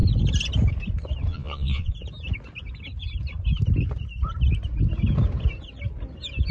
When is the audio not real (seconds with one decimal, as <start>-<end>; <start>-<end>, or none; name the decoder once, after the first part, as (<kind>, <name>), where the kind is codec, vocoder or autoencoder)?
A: 1.3-1.9 (vocoder, Vocos)